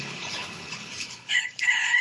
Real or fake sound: fake